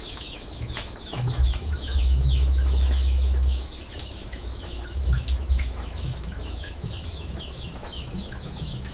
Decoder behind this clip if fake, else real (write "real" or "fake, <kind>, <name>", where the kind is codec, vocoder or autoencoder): fake, autoencoder, DAC-VAE